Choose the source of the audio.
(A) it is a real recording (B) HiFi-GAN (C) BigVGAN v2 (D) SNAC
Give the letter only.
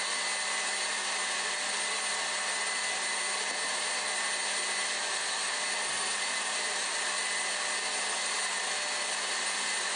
A